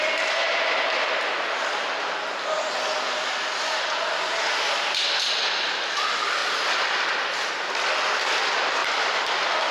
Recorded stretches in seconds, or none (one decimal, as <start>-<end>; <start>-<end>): 0.0-6.4; 7.5-9.7